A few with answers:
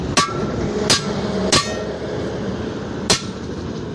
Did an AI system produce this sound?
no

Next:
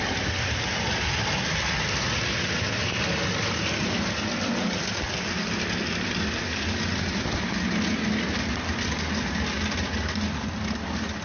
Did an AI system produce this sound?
no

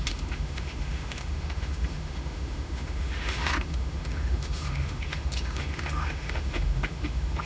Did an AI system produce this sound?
yes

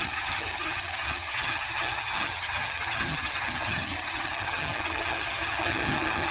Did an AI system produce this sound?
yes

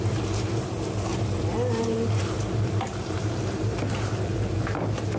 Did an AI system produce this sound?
yes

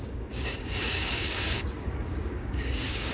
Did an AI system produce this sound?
yes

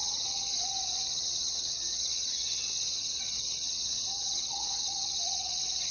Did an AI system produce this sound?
yes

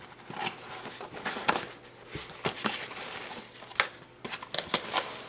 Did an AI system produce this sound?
no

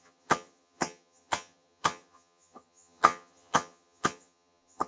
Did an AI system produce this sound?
yes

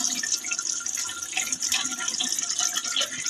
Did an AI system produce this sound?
no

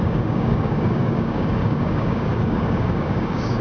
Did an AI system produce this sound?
yes